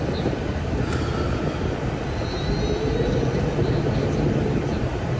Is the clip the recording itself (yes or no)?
yes